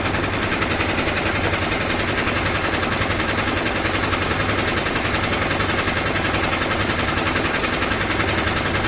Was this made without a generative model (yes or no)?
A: yes